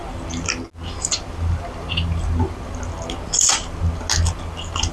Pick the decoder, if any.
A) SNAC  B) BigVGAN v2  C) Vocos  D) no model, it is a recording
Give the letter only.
D